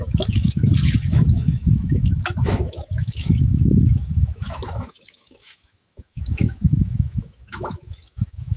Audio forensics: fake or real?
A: fake